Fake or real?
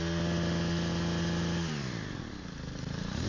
real